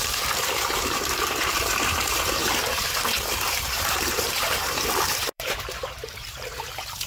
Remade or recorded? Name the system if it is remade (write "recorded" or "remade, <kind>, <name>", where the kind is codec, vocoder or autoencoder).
remade, vocoder, BigVGAN v2